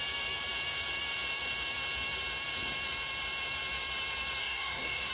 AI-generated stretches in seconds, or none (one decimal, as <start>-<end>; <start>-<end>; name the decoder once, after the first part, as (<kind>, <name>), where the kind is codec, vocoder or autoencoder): 4.4-5.1 (codec, DAC)